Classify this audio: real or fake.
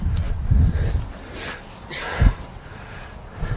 fake